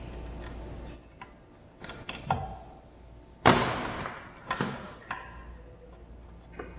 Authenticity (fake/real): real